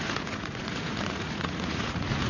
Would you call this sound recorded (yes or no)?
no